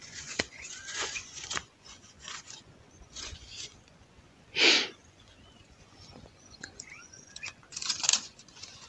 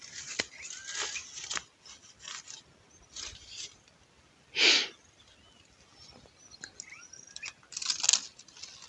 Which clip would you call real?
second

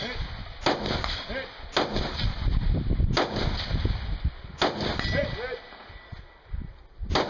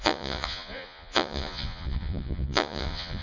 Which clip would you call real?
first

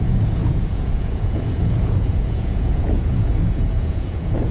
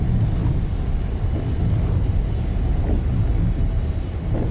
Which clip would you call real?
second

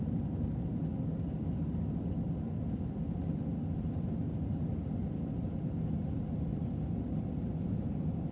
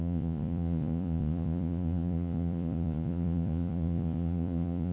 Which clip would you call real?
first